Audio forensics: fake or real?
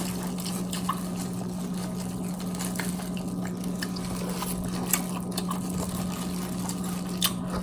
real